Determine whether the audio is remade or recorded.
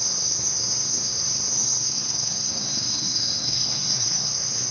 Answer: remade